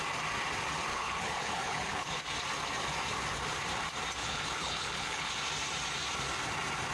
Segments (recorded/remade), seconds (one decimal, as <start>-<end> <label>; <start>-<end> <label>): 0.0-0.9 recorded; 0.9-2.2 remade; 2.2-4.2 recorded; 4.2-5.3 remade; 5.3-6.9 recorded